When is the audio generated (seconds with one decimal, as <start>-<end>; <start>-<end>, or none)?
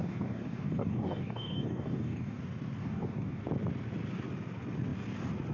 0.0-2.4; 2.8-3.4